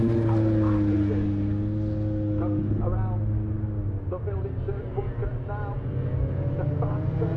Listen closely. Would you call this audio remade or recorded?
recorded